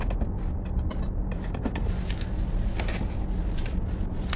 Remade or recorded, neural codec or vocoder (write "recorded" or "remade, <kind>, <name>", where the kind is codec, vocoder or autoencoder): recorded